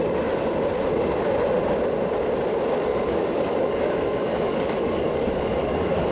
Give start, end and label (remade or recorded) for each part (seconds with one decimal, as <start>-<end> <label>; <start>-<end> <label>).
0.0-2.9 recorded; 2.9-6.1 remade